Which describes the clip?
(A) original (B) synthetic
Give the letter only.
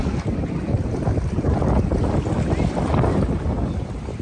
A